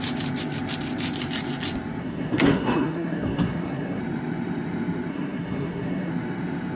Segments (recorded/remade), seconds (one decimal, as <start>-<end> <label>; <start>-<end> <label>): 0.0-2.0 recorded; 2.0-4.0 remade; 4.0-5.1 recorded; 5.1-6.1 remade; 6.1-6.8 recorded